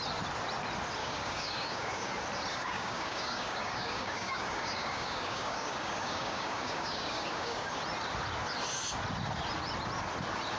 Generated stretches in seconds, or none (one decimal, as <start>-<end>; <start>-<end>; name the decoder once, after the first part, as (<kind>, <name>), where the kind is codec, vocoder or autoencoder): 1.0-2.1 (codec, DAC); 2.5-7.7